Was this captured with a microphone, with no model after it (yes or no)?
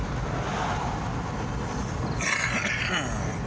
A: yes